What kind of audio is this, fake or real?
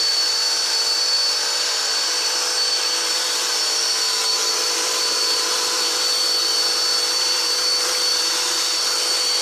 fake